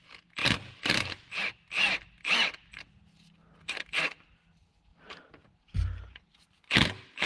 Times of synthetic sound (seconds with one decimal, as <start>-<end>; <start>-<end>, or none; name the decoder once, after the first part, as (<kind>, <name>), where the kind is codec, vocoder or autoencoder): 0.4-1.7 (vocoder, BigVGAN v2); 4.9-7.3

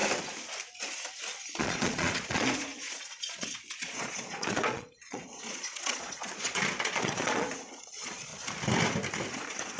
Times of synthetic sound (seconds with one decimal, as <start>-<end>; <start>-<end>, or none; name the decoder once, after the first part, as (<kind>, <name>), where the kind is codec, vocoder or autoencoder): 1.6-8.3 (vocoder, Vocos); 9.3-9.8

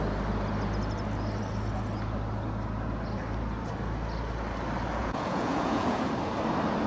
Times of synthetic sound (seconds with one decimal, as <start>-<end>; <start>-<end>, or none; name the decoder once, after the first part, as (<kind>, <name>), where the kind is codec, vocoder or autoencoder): 5.0-6.1 (vocoder, Vocos)

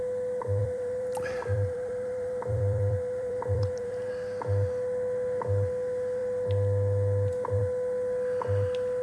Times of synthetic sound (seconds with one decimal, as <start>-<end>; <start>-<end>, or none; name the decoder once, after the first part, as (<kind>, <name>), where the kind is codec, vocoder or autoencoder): 0.6-4.1 (vocoder, BigVGAN v2)